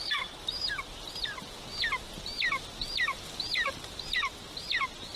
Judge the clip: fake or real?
real